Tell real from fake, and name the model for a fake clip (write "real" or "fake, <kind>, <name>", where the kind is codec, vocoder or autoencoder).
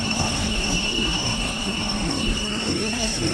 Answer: fake, codec, SNAC